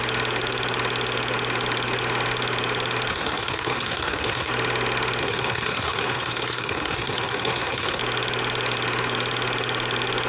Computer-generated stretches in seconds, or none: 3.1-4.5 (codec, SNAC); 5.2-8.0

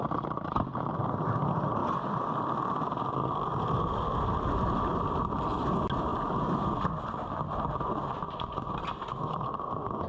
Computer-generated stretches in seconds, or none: 6.1-6.6 (vocoder, BigVGAN v2)

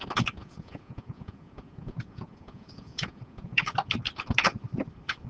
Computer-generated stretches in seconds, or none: 0.4-3.6 (vocoder, Vocos)

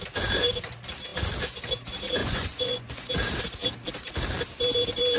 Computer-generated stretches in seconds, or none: 2.2-3.1 (vocoder, Vocos)

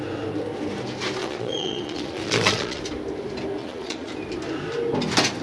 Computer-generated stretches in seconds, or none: 1.2-2.8 (vocoder, Vocos); 3.6-4.1